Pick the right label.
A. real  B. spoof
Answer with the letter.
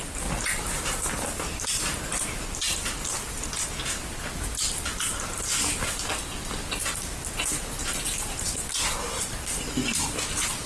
A